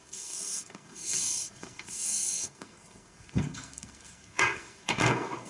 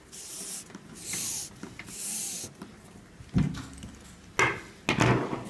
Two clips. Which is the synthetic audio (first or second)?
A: first